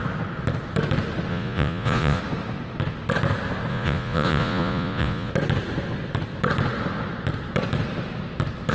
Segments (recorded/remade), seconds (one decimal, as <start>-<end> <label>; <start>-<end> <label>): 0.0-1.3 recorded; 1.3-2.2 remade; 2.2-3.7 recorded; 3.7-5.3 remade; 5.3-8.7 recorded